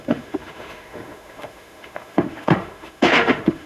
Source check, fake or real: fake